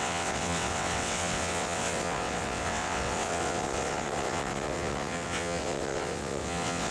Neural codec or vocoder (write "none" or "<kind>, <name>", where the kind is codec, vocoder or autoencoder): vocoder, WaveNeXt